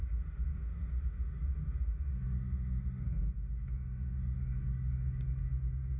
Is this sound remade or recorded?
remade